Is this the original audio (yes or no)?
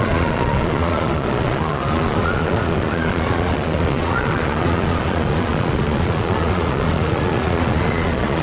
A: no